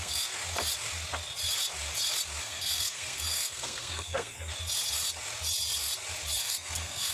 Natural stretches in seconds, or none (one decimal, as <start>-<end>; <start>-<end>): 0.4-2.4; 4.5-6.4